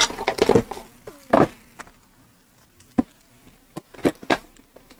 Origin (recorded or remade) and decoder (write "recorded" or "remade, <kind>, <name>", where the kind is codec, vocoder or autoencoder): recorded